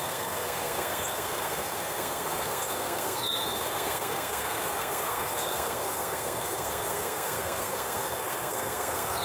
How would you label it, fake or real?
fake